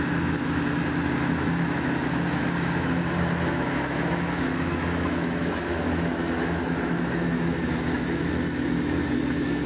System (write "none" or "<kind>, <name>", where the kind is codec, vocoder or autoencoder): autoencoder, DAC-VAE